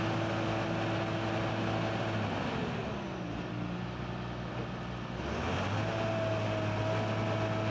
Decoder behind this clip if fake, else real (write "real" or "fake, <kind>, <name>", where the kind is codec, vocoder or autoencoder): real